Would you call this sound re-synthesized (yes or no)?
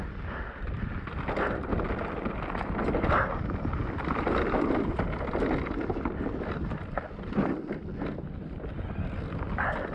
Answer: no